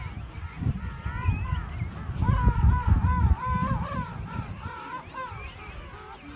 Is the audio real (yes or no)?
yes